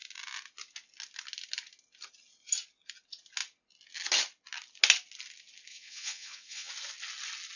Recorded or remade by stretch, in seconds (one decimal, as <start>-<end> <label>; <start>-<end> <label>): 0.0-5.7 recorded; 5.7-6.7 remade; 6.7-7.6 recorded